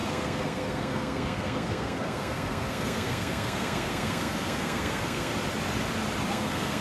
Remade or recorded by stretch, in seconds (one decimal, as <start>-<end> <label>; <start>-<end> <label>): 0.0-5.3 remade; 5.3-6.3 recorded; 6.3-6.8 remade